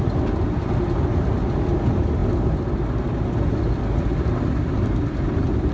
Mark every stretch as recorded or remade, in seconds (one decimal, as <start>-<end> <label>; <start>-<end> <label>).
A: 0.0-5.7 recorded